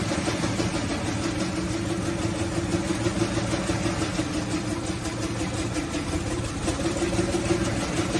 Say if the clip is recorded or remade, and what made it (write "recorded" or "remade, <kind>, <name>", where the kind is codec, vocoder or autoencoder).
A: recorded